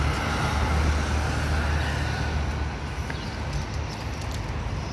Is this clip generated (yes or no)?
no